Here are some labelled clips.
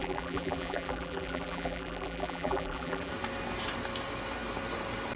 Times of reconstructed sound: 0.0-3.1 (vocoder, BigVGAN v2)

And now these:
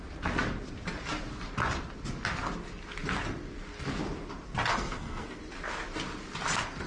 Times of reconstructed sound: 4.7-5.4 (codec, SNAC)